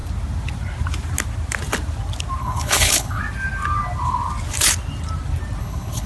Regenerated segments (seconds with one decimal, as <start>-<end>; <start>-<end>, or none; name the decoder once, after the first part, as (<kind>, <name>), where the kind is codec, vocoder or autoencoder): 2.4-3.2 (codec, HILCodec); 5.6-6.1